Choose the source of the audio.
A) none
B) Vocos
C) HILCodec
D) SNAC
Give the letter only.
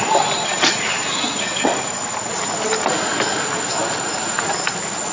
A